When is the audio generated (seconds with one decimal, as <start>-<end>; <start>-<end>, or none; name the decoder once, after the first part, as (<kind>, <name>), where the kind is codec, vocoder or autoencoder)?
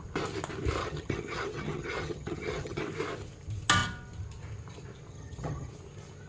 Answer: 0.8-2.8 (vocoder, HiFi-GAN); 5.1-5.7